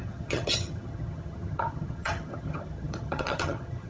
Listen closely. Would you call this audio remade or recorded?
remade